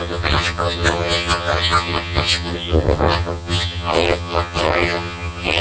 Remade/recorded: remade